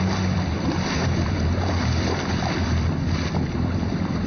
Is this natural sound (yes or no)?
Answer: no